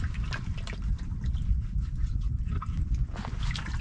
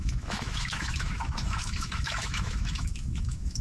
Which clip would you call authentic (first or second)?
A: first